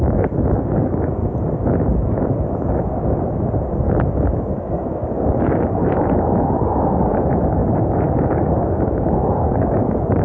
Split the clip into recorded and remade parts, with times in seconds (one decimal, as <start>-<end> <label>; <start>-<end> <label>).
0.0-1.2 remade; 1.2-4.4 recorded; 4.4-10.2 remade